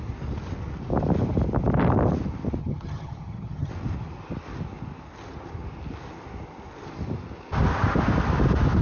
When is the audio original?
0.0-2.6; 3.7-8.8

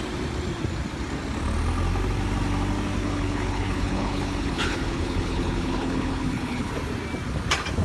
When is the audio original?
0.0-3.0; 6.7-7.8

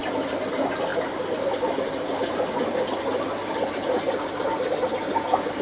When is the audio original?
0.0-5.6

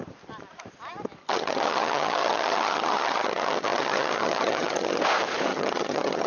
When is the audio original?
0.0-1.2; 5.0-5.5